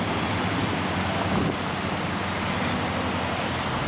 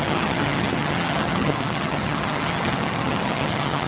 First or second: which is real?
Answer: first